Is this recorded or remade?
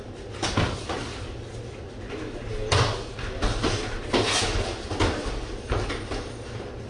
recorded